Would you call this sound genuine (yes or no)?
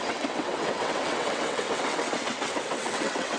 no